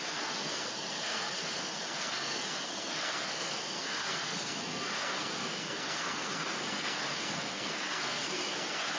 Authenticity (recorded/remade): remade